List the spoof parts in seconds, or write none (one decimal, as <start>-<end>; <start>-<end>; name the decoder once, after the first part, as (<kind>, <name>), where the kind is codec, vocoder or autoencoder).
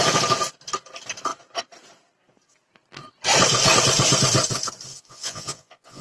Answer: 4.9-6.0 (vocoder, Vocos)